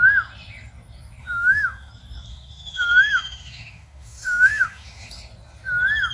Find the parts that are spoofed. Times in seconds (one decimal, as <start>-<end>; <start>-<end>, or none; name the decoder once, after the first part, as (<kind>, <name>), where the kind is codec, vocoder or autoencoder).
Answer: 1.2-1.9 (autoencoder, DAC-VAE); 2.3-5.1